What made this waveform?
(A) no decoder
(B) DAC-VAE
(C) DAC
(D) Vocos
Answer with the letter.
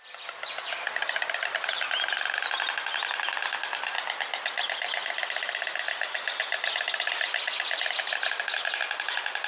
A